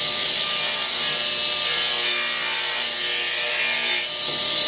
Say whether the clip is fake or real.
real